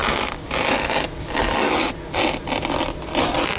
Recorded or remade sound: recorded